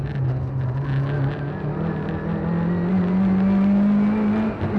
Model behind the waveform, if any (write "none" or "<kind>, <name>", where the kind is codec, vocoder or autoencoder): none